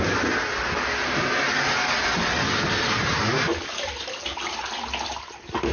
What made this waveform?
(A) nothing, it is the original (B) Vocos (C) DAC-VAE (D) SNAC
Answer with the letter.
A